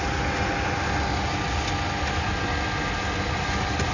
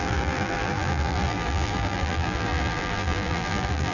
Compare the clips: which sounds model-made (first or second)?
second